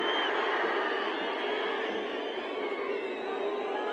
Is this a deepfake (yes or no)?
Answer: no